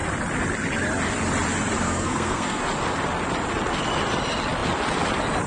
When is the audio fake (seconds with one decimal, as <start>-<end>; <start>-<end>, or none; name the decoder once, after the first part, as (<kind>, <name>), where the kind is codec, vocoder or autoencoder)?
1.8-2.6 (codec, SNAC)